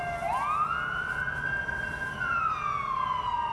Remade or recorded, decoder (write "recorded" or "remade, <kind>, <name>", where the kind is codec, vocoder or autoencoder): recorded